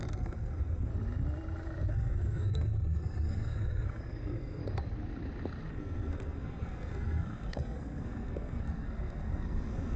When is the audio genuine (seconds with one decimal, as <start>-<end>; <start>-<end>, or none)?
0.9-1.9; 4.6-5.7